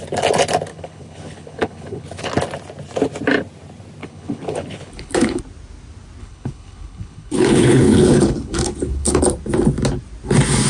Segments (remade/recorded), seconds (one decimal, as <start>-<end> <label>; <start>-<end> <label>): 0.0-0.7 recorded; 0.7-2.2 remade; 2.2-4.0 recorded; 4.0-5.4 remade; 5.4-6.2 recorded; 6.2-9.2 remade; 9.2-10.7 recorded